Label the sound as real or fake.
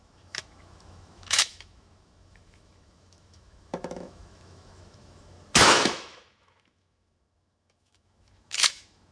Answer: fake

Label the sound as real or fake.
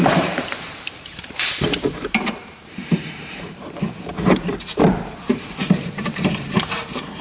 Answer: fake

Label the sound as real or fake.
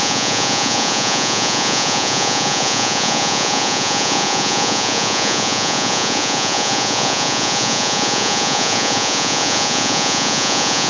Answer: fake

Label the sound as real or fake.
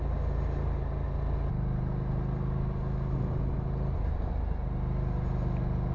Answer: real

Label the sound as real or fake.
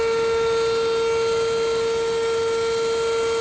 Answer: real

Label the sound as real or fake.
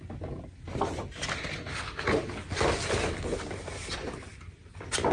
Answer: real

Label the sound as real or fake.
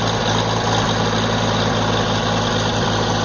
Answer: real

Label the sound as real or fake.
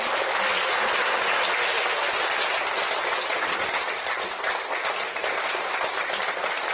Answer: real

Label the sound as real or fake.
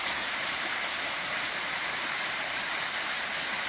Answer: fake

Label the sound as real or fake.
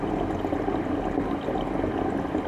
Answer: real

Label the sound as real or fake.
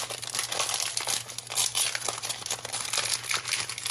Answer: real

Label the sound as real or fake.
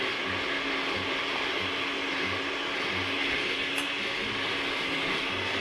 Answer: real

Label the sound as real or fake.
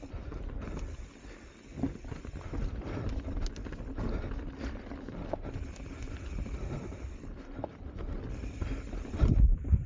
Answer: real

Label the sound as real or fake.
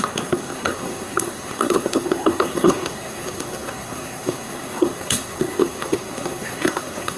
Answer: fake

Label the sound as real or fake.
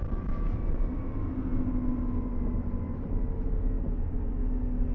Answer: real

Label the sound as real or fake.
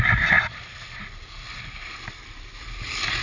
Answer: real